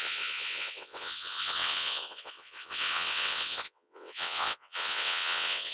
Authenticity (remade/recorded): remade